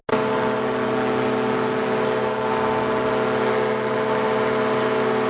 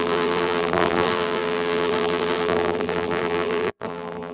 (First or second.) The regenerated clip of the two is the second